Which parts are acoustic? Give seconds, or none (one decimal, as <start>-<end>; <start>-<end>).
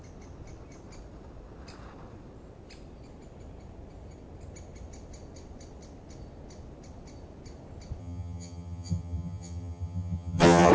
0.0-8.0